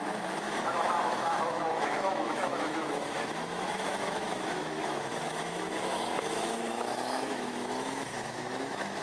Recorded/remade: remade